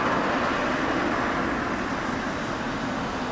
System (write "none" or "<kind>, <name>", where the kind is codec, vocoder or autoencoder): none